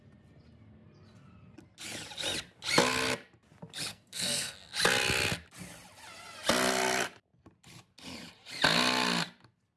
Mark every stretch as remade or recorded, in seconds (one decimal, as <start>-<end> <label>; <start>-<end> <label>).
0.0-3.9 recorded; 3.9-4.7 remade; 4.7-9.8 recorded